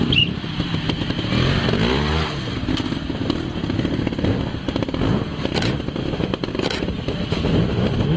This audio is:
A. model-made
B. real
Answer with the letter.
B